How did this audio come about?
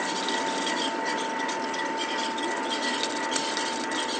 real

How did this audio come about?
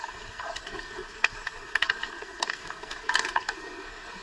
fake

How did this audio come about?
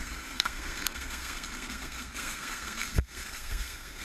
fake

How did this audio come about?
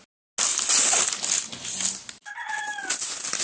real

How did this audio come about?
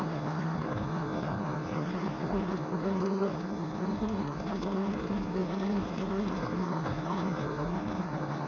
fake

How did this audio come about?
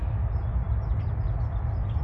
real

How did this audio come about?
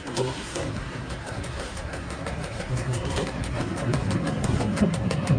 fake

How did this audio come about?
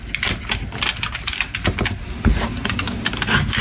real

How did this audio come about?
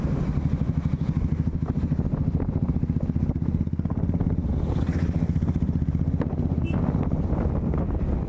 real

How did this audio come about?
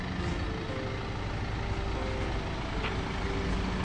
real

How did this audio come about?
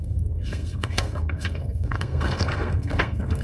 fake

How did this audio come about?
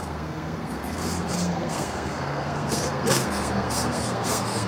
fake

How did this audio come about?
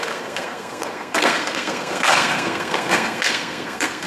fake